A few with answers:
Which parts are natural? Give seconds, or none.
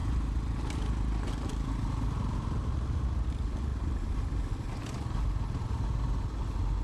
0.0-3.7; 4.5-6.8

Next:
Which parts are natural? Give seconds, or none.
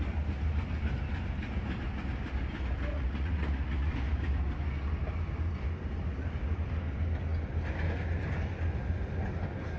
0.0-2.9; 3.9-9.8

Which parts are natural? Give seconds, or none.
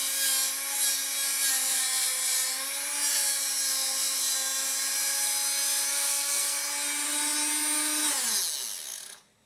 0.0-5.9; 6.6-9.5